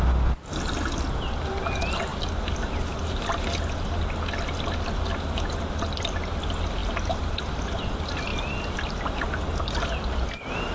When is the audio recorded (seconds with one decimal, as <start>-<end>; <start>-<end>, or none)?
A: 0.0-10.7